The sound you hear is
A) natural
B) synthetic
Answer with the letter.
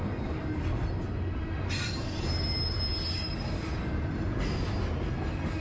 A